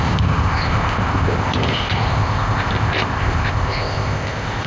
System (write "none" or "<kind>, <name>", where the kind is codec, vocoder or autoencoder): codec, ZipCodec